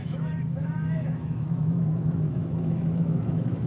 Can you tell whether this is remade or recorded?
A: remade